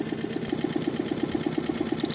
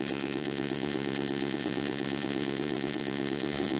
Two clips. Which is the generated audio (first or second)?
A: second